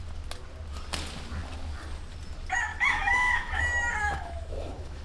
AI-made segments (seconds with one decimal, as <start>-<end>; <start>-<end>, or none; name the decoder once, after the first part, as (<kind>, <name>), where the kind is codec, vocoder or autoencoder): 2.7-3.6 (autoencoder, DAC-VAE); 4.0-5.0